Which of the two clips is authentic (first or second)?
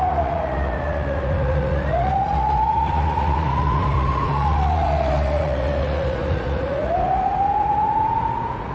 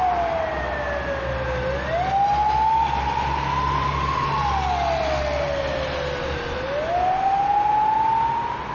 second